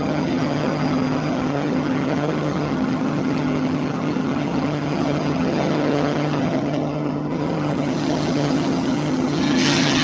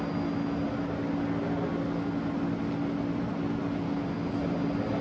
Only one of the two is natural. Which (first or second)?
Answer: second